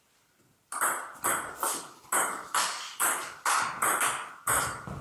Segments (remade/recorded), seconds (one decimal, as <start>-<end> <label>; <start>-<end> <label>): 0.0-1.7 recorded; 1.7-3.6 remade; 3.6-5.0 recorded